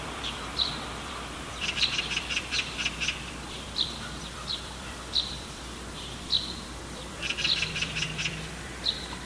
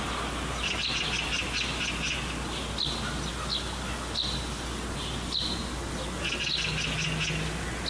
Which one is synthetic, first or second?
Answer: first